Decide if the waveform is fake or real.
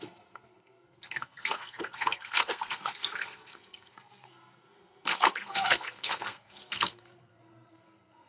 fake